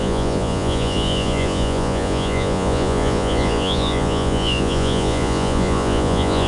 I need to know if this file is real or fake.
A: fake